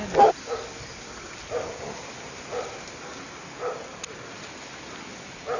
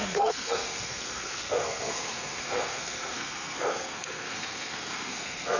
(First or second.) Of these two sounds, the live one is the first